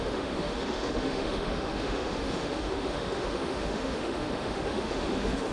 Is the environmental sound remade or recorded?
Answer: remade